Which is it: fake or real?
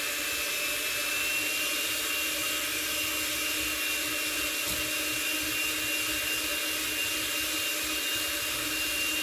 real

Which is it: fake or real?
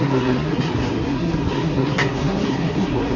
fake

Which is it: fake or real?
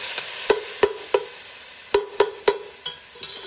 real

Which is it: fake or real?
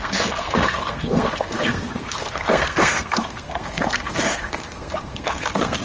fake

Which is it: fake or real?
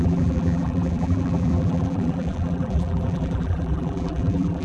fake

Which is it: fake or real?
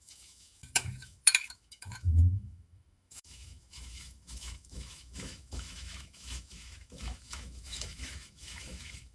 fake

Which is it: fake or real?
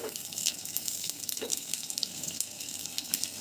fake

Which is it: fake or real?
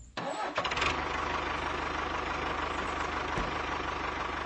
real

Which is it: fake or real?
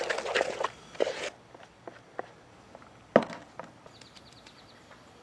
real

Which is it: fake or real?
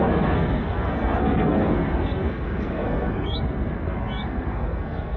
fake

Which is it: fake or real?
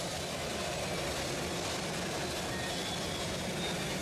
real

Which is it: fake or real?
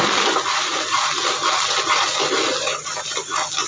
real